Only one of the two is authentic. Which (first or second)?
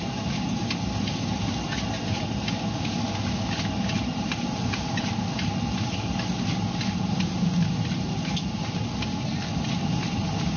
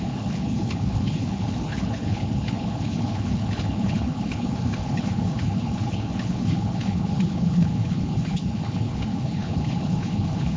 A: first